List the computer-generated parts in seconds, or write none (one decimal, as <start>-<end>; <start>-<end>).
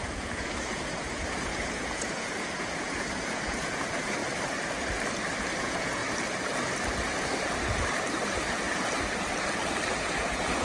0.0-4.2; 5.6-6.0; 10.0-10.6